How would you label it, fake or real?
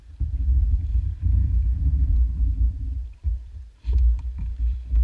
fake